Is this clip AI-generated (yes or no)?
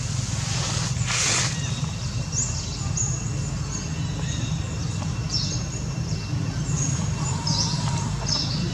no